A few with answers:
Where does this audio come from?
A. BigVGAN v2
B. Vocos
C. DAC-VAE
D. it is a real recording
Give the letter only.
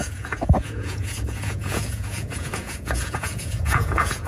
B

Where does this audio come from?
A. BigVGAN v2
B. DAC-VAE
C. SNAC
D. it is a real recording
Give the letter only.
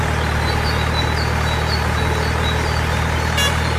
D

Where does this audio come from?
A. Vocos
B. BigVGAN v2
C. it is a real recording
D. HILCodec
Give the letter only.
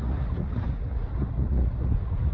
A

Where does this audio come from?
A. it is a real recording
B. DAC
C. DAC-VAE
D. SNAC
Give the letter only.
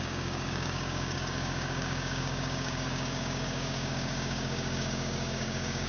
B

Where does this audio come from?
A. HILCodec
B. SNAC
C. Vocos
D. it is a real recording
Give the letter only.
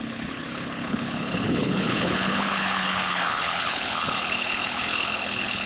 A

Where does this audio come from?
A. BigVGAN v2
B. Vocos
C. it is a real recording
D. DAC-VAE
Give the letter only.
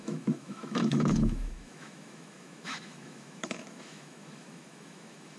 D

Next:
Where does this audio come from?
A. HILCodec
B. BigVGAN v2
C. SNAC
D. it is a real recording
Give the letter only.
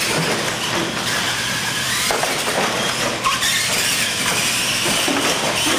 B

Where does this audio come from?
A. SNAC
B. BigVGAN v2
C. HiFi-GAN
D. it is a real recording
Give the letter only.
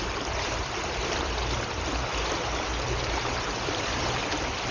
B